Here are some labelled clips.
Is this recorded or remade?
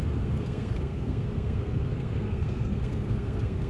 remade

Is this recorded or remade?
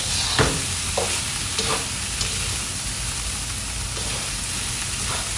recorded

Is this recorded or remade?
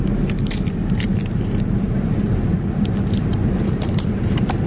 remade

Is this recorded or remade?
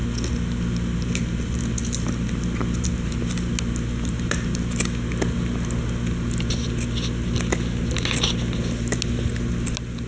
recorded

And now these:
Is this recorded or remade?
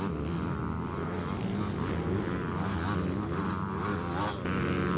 recorded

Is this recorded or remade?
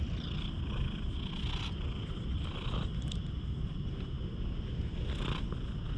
recorded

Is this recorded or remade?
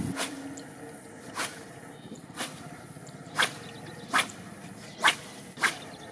recorded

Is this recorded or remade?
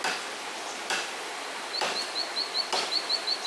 recorded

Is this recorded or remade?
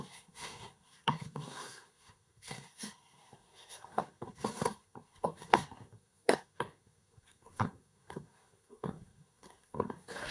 remade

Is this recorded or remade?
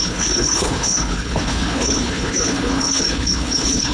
remade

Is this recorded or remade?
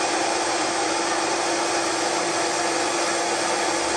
recorded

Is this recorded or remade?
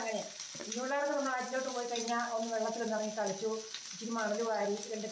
recorded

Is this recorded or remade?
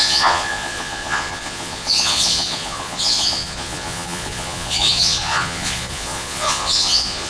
remade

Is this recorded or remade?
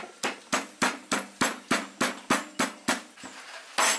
recorded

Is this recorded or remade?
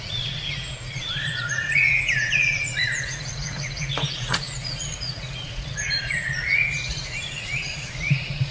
remade